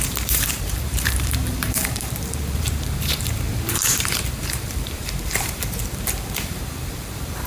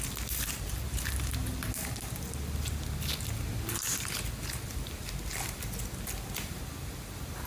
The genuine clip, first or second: second